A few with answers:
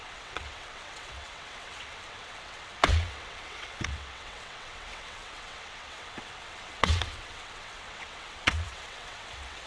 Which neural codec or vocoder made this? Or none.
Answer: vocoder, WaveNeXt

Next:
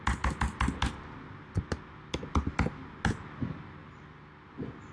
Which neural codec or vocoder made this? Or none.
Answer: none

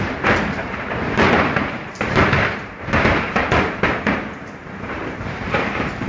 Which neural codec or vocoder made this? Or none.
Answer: vocoder, BigVGAN v2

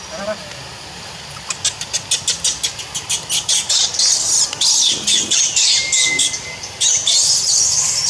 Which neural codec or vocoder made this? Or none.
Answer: none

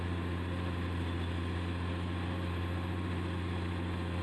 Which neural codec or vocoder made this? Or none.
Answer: none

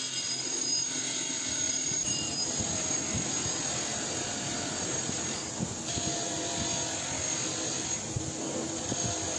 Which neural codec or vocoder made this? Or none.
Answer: none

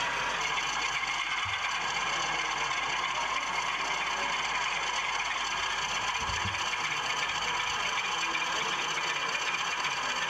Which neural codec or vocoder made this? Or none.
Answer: none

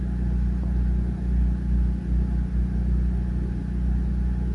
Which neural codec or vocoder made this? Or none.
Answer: none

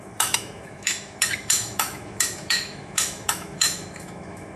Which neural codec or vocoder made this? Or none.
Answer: autoencoder, DAC-VAE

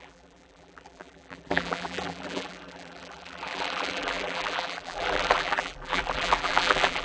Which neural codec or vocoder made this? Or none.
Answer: vocoder, BigVGAN v2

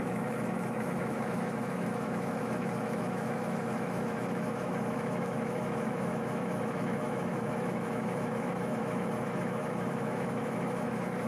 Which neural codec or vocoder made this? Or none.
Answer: autoencoder, DAC-VAE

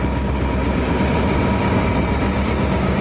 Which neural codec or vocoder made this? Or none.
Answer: none